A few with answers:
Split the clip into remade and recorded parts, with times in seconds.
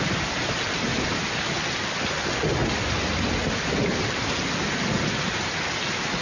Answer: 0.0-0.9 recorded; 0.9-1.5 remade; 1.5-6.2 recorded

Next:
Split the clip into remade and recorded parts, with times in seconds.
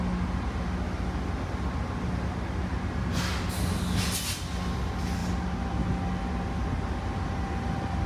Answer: 0.0-8.1 recorded